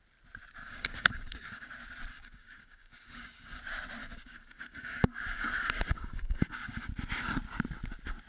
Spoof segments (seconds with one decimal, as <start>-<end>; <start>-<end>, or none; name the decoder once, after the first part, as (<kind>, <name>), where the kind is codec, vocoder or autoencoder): 0.6-1.7 (codec, DAC); 2.1-3.6; 4.0-6.9